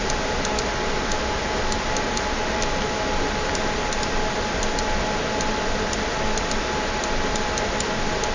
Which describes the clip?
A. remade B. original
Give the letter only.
B